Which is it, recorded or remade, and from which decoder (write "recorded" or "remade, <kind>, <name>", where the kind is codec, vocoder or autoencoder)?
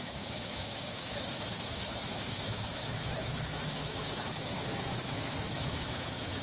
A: remade, autoencoder, DAC-VAE